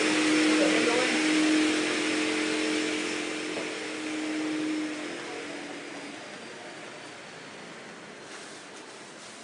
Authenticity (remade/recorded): recorded